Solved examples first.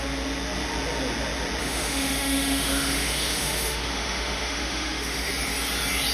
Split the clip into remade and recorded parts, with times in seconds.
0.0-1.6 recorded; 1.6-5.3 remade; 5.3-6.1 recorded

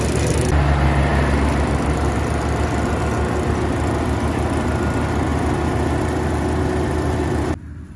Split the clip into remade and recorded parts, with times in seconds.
0.0-8.0 recorded

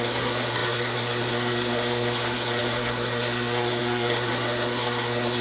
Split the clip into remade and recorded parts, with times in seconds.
0.0-5.4 remade